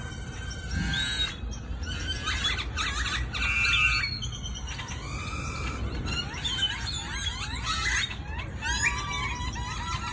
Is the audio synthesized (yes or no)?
no